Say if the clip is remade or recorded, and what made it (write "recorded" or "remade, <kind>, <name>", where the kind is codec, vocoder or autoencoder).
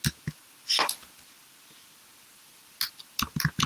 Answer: recorded